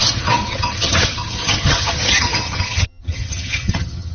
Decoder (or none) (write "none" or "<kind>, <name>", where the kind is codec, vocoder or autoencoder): vocoder, HiFi-GAN